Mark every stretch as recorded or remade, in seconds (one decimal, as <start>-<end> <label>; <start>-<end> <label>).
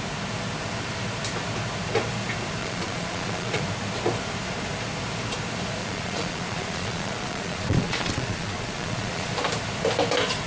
0.0-2.6 recorded; 2.6-3.6 remade; 3.6-5.8 recorded; 5.8-9.3 remade; 9.3-10.5 recorded